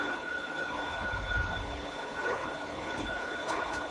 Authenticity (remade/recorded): remade